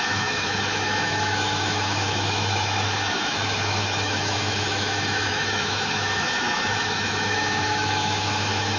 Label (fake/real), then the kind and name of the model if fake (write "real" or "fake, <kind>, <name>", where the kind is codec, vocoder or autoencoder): fake, autoencoder, DAC-VAE